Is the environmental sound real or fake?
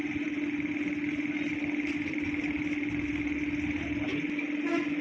real